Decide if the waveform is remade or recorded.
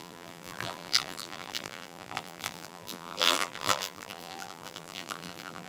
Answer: remade